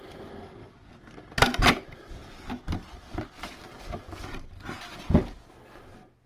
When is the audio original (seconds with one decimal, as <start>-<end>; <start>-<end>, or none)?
0.0-6.3